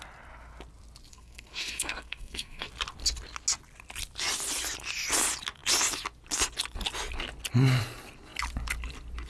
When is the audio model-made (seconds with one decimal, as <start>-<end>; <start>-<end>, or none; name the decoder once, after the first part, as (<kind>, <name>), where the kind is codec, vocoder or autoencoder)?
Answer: 1.1-2.7 (codec, SNAC)